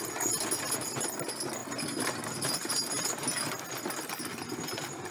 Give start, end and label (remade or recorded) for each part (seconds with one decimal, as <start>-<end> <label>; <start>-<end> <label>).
0.0-5.1 recorded